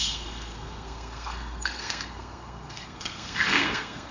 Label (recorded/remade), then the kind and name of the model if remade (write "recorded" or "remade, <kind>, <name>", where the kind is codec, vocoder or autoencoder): remade, codec, SNAC